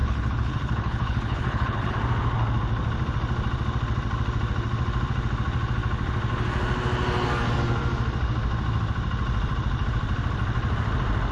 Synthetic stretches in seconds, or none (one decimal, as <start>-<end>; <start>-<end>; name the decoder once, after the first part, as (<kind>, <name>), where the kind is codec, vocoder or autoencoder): 0.0-1.9 (codec, HILCodec)